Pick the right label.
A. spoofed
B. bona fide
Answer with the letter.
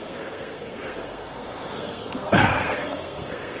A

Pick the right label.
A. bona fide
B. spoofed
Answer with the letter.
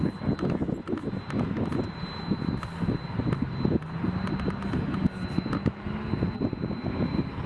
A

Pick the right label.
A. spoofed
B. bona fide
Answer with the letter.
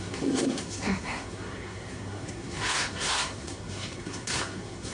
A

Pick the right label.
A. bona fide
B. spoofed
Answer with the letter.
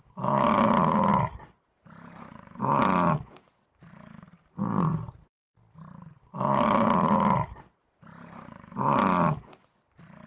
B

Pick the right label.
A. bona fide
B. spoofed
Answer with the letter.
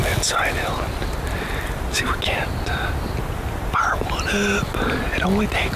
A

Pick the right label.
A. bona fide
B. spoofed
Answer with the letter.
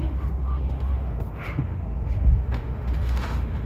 B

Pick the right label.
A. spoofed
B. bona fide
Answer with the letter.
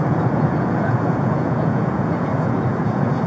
A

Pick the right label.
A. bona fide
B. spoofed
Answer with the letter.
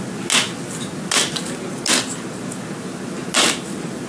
A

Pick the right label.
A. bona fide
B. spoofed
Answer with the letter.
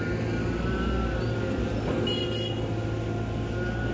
A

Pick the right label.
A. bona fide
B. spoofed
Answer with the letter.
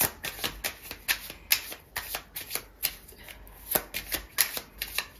A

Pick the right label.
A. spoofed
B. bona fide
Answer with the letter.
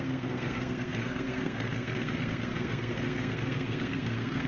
A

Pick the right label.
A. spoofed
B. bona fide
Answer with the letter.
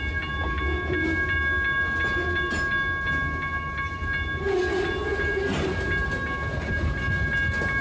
B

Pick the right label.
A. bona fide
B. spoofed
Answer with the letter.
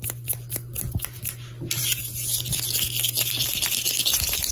A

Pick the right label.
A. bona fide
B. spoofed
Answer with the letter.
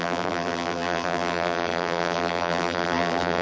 B